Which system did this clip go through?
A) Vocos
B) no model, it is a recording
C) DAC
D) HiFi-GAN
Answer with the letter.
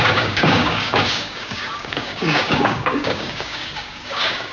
C